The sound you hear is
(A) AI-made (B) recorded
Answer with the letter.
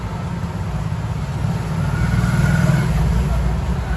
B